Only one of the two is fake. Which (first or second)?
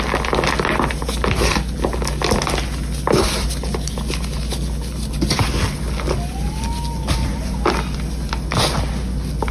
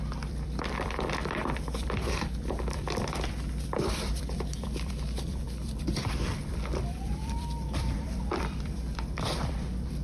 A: second